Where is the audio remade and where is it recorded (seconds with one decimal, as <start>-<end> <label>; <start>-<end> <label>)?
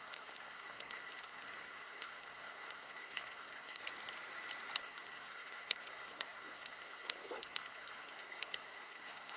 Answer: 0.0-3.8 remade; 3.8-4.8 recorded; 4.8-9.4 remade